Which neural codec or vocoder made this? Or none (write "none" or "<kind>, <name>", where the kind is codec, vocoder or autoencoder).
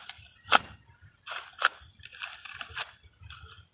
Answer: none